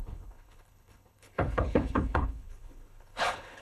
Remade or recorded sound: remade